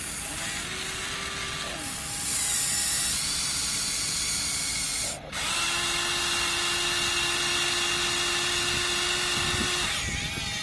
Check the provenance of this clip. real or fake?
real